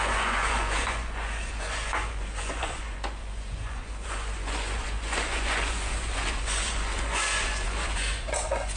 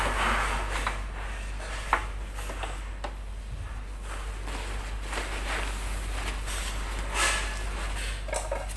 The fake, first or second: first